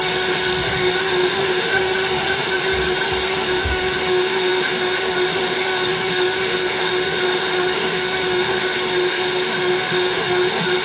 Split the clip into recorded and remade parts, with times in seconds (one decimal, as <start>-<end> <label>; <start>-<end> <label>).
0.0-2.6 remade; 2.6-3.3 recorded; 3.3-10.8 remade